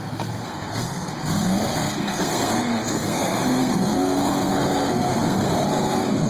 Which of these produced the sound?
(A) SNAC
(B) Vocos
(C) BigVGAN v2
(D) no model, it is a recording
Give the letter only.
A